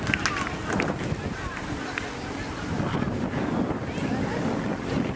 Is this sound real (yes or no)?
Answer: yes